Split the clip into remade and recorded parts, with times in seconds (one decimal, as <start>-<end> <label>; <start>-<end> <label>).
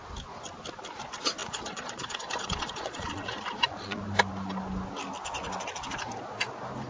0.0-1.4 recorded; 1.4-4.0 remade; 4.0-6.9 recorded